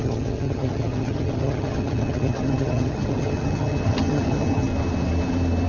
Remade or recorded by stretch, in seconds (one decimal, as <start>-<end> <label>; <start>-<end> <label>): 0.0-4.7 remade; 4.7-5.7 recorded